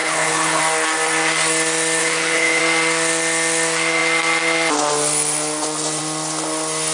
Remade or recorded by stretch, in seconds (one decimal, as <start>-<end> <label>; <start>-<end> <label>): 0.0-0.6 remade; 0.6-2.0 recorded; 2.0-2.6 remade; 2.6-6.9 recorded